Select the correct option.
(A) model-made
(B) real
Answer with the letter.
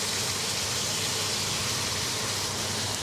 B